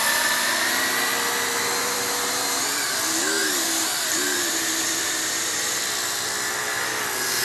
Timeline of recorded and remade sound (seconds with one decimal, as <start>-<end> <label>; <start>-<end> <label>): 0.0-1.8 recorded; 1.8-2.9 remade; 2.9-3.4 recorded; 3.4-5.8 remade; 5.8-7.4 recorded